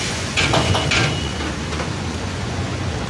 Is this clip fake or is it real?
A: fake